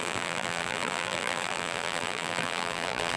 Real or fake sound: fake